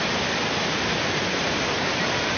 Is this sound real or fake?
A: real